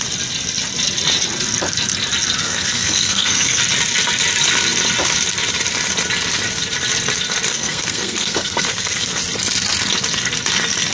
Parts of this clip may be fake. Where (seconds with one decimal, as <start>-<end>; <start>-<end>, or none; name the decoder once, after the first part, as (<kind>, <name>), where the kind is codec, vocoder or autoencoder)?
2.4-3.6 (codec, SNAC); 7.5-9.2